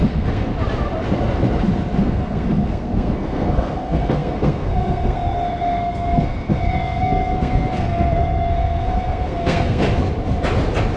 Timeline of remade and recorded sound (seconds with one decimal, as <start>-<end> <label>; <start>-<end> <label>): 0.0-0.5 remade; 0.5-2.0 recorded; 2.0-9.8 remade; 9.8-11.0 recorded